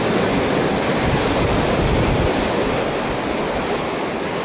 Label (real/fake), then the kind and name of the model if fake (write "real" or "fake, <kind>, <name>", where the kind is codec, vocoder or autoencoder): real